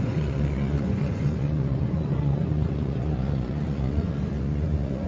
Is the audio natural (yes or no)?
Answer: no